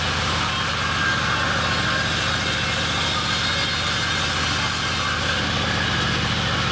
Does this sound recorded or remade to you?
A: recorded